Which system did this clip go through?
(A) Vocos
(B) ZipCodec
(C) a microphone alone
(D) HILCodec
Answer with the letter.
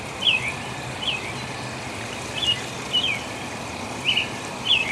C